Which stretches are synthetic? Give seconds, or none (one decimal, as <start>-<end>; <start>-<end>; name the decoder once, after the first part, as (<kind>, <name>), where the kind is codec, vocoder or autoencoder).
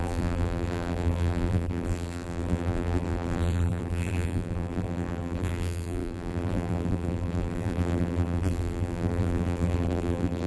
0.0-10.5 (vocoder, BigVGAN v2)